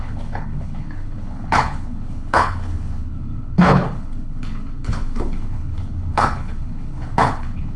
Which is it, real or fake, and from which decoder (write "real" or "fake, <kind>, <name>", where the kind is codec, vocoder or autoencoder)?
fake, codec, HILCodec